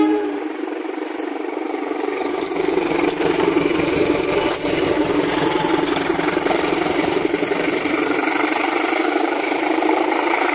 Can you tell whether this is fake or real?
fake